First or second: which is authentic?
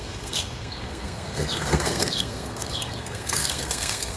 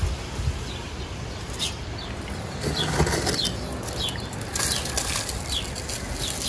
second